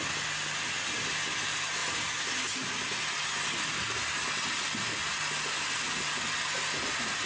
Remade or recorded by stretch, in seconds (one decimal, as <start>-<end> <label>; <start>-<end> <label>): 0.0-7.2 recorded